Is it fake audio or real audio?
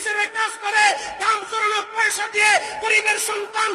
fake